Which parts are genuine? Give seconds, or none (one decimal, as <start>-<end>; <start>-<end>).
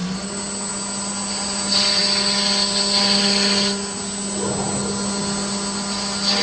0.0-6.4